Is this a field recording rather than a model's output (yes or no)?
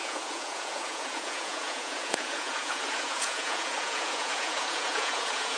no